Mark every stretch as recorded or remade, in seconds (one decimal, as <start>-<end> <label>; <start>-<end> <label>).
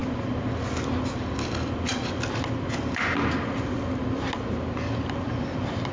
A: 0.0-5.9 recorded